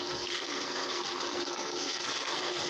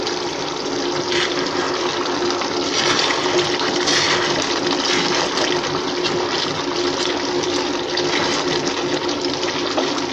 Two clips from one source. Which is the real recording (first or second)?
second